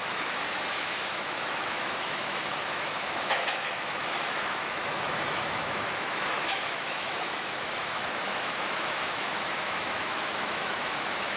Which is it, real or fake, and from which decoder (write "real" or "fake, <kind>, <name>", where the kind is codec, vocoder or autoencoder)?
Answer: fake, autoencoder, DAC-VAE